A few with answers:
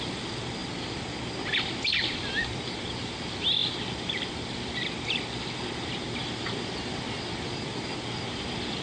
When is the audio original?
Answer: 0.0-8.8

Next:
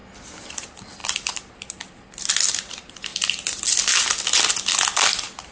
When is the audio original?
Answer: 0.0-5.5

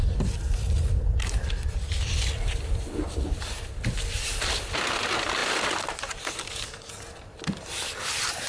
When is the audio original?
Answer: 0.0-8.5

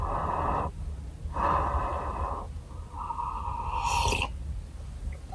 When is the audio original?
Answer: 0.0-5.3

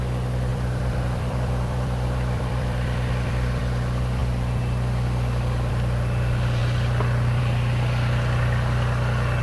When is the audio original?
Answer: 0.0-0.5; 3.6-6.6; 7.4-9.4